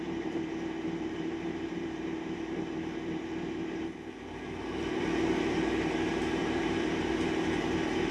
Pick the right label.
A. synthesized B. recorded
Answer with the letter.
A